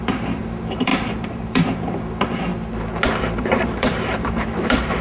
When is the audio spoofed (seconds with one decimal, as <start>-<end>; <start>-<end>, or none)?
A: 0.0-2.5; 3.2-5.0